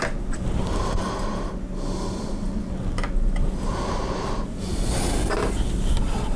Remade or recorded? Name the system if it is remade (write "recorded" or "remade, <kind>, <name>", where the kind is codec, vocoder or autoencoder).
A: recorded